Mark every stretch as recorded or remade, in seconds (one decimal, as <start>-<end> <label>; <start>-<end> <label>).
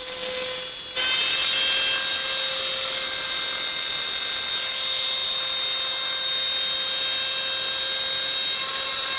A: 0.0-9.2 recorded